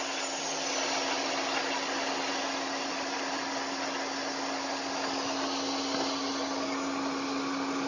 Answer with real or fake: real